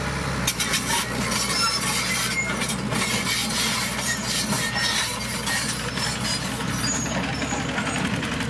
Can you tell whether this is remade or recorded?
recorded